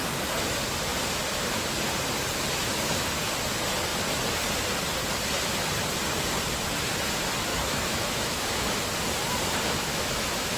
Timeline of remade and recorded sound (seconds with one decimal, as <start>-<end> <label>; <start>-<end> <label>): 0.0-7.5 recorded; 7.5-8.7 remade; 8.7-9.8 recorded; 9.8-10.6 remade